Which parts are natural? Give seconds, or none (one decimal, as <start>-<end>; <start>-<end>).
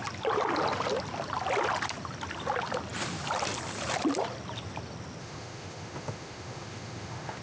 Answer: 0.0-5.2